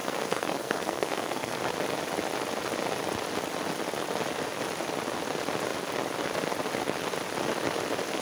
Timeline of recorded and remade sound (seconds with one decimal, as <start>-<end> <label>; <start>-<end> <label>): 0.0-1.6 remade; 1.6-8.2 recorded